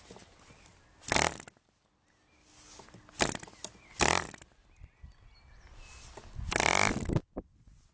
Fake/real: real